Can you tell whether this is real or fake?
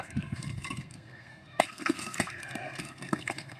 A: fake